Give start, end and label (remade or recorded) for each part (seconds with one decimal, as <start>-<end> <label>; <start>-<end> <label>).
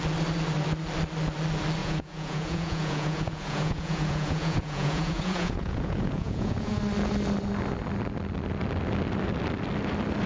0.0-1.8 recorded; 1.8-6.8 remade; 6.8-10.3 recorded